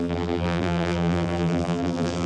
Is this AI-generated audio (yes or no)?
yes